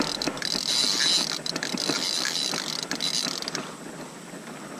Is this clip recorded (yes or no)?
yes